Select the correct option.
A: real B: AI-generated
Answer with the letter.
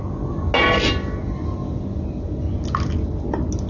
A